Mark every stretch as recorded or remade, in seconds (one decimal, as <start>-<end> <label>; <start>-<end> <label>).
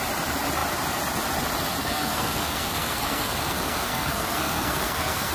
0.0-1.8 recorded; 1.8-5.3 remade